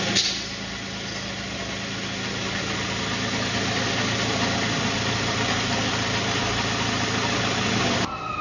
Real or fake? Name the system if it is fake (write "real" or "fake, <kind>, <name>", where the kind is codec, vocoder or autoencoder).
real